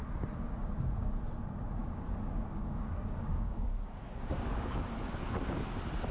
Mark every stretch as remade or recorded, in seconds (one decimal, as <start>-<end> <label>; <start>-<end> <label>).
0.0-1.8 recorded; 1.8-4.8 remade; 4.8-6.1 recorded